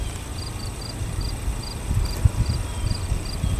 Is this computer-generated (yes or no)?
no